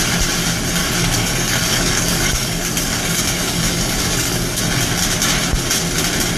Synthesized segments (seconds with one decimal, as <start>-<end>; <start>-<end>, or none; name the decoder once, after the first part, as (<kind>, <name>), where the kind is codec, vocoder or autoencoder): 0.8-4.6 (codec, DAC)